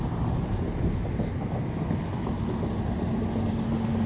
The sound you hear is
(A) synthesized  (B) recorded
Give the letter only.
B